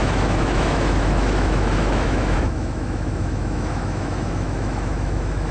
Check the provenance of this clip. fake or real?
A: fake